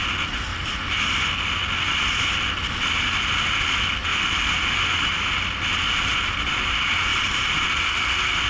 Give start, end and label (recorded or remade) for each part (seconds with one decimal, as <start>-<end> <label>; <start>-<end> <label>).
0.0-0.5 recorded; 0.5-1.0 remade; 1.0-7.1 recorded; 7.1-7.8 remade; 7.8-8.5 recorded